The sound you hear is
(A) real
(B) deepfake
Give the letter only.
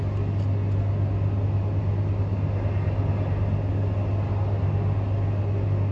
A